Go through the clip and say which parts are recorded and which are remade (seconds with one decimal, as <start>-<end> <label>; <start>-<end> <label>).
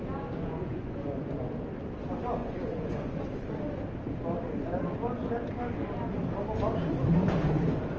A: 0.0-0.4 recorded; 0.4-1.3 remade; 1.3-2.4 recorded; 2.4-3.2 remade; 3.2-8.0 recorded